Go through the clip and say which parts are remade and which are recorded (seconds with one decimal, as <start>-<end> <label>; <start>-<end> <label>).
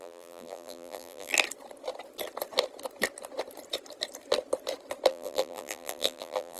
0.0-1.3 remade; 1.3-5.1 recorded; 5.1-6.6 remade